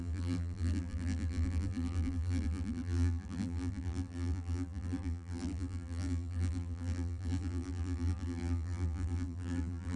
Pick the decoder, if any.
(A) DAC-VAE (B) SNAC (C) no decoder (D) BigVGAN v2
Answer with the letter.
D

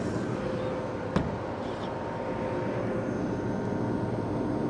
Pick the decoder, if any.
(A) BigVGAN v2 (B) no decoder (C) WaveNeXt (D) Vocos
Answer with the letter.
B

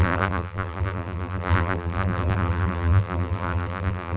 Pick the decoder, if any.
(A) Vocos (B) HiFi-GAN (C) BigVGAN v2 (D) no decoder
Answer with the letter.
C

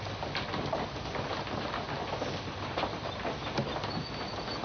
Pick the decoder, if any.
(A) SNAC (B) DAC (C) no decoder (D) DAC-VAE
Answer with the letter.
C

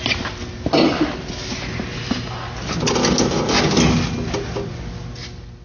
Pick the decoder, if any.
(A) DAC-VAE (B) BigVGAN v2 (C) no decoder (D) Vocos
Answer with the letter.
C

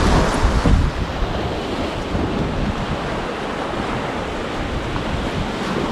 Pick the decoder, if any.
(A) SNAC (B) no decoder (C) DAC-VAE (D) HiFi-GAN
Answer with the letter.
B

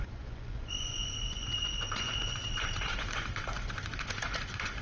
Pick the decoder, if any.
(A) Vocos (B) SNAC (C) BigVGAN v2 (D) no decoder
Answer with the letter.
A